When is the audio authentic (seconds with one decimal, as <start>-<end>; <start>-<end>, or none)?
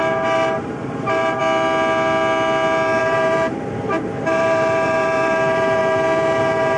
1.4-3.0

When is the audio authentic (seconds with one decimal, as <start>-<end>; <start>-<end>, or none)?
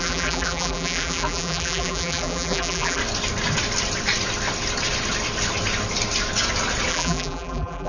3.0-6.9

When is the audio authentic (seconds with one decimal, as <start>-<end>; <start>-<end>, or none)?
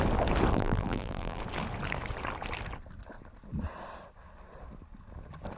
0.0-0.5; 1.4-5.6